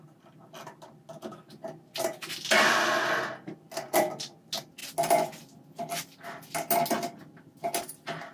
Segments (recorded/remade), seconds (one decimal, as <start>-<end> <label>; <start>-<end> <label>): 0.0-8.3 recorded